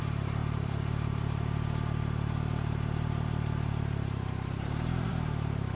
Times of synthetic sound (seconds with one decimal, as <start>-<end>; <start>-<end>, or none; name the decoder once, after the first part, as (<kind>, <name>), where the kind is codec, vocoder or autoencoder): 0.0-5.8 (vocoder, BigVGAN v2)